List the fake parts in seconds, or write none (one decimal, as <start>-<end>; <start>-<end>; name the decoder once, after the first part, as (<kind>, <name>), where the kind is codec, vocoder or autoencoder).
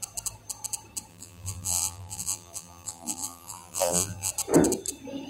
1.1-4.3 (vocoder, BigVGAN v2)